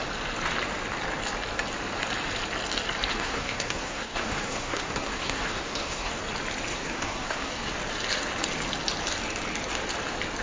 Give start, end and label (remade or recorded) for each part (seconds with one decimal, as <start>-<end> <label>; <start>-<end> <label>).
0.0-3.1 recorded; 3.1-6.2 remade; 6.2-6.7 recorded; 6.7-7.7 remade; 7.7-10.4 recorded